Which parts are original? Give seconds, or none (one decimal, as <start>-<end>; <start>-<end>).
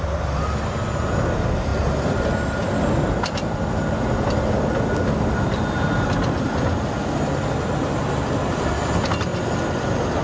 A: 0.0-10.2